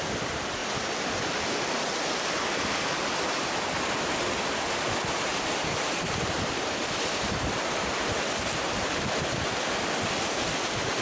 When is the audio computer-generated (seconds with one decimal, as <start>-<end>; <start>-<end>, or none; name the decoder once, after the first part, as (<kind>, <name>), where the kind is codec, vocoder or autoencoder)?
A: 5.3-9.5 (vocoder, BigVGAN v2)